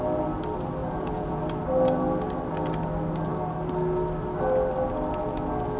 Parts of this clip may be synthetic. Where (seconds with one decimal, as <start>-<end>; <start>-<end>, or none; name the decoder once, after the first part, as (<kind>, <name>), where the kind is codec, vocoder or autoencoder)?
0.8-1.4 (vocoder, Vocos)